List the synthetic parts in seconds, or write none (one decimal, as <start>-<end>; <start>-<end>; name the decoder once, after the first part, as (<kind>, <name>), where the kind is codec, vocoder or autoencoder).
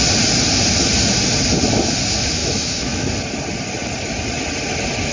2.4-3.1 (autoencoder, DAC-VAE)